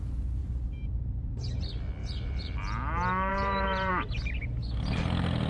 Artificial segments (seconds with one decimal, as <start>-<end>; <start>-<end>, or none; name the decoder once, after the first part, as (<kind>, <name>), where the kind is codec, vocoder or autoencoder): 0.4-1.6 (vocoder, BigVGAN v2); 2.0-2.6; 3.3-3.9